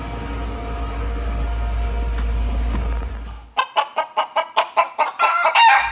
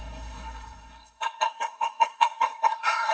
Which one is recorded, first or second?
first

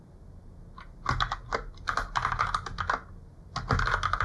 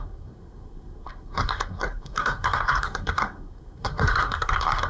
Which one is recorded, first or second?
first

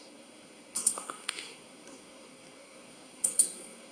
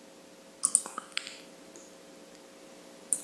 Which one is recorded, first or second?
second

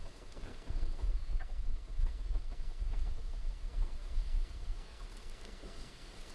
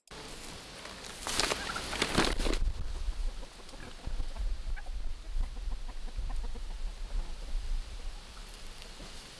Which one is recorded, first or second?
second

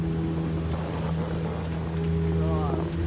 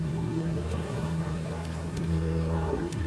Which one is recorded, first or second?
first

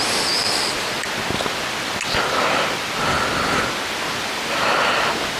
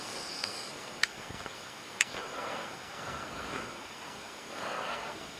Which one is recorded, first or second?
first